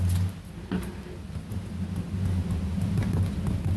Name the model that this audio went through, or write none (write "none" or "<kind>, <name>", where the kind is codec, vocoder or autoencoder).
none